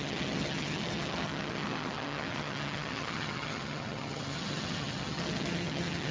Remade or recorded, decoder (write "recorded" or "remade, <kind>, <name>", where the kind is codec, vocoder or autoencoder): remade, vocoder, HiFi-GAN